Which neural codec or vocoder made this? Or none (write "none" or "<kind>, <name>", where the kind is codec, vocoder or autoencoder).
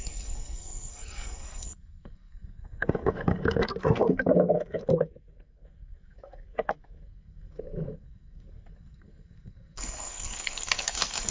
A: codec, SNAC